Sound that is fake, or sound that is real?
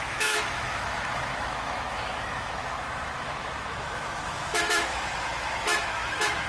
fake